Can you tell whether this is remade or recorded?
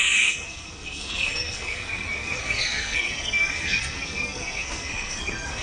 remade